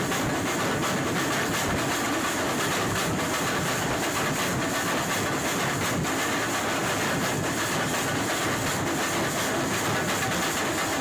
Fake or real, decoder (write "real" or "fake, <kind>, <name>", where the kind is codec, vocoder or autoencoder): real